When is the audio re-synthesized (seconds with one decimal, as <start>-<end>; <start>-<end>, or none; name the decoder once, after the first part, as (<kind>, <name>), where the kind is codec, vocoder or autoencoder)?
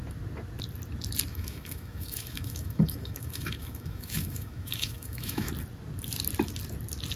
1.3-5.5 (autoencoder, DAC-VAE)